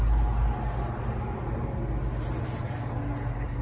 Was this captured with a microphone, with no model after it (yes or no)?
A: yes